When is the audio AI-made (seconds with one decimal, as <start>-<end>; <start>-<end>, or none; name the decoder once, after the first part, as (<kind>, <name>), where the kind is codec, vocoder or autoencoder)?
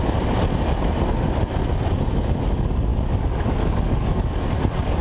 2.9-5.0 (codec, DAC)